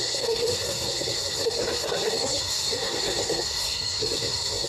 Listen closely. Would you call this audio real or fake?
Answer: fake